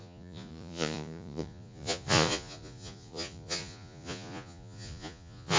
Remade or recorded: remade